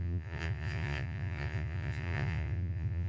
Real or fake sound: fake